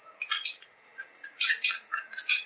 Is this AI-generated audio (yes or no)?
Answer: yes